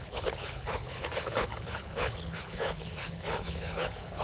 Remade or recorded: remade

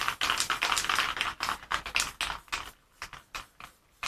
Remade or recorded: recorded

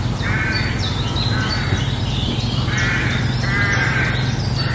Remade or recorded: recorded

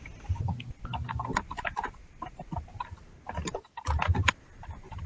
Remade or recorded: recorded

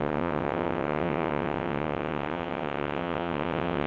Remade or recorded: remade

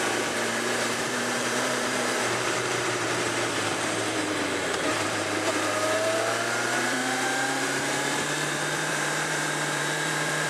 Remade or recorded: remade